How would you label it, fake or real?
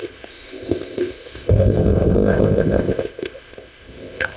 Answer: fake